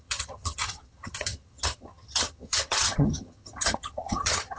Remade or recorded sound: remade